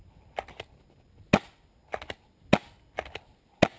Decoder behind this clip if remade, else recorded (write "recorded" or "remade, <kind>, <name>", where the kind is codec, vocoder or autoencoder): recorded